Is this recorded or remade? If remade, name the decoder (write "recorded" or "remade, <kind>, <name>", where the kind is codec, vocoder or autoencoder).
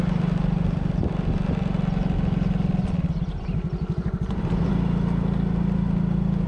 recorded